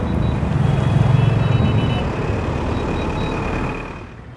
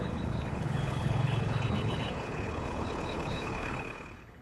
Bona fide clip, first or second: first